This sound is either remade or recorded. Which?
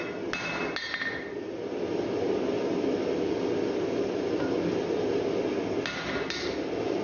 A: recorded